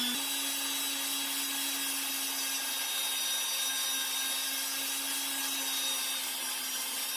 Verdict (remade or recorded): recorded